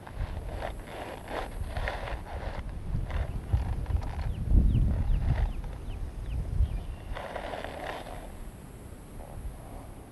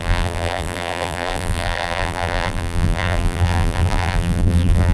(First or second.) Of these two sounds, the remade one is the second